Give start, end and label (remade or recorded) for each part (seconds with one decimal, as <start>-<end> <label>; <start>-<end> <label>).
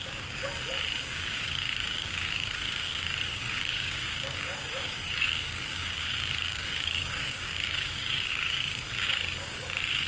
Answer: 0.0-0.4 remade; 0.4-1.0 recorded; 1.0-10.1 remade